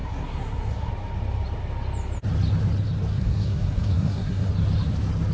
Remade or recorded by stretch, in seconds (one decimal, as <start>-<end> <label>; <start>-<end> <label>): 0.0-0.9 remade; 0.9-3.1 recorded; 3.1-4.5 remade; 4.5-5.3 recorded